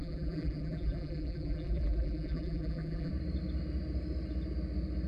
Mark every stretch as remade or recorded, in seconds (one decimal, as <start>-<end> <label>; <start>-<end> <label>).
0.0-3.1 remade; 3.1-5.1 recorded